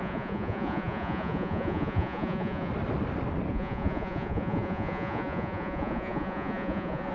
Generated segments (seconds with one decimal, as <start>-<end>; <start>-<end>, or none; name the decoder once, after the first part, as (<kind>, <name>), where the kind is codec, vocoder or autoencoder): 0.0-2.7 (vocoder, Vocos); 3.5-7.1